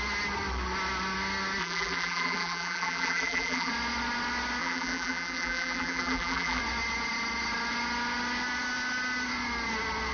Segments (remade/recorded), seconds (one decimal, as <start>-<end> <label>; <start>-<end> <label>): 0.0-1.6 recorded; 1.6-3.7 remade; 3.7-4.6 recorded; 4.6-6.6 remade; 6.6-10.1 recorded